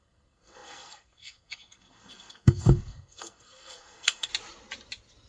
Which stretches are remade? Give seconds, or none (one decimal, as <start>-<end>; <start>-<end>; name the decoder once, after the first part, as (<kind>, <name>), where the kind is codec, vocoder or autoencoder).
0.0-4.3 (codec, SNAC)

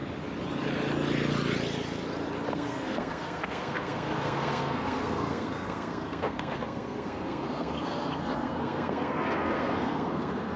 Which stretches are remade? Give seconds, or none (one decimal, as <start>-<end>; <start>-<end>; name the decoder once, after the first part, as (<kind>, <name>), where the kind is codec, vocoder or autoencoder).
2.5-10.6 (codec, SNAC)